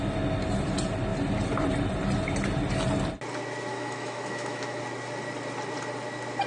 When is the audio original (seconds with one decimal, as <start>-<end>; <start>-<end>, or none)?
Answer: 0.0-3.7; 4.8-6.5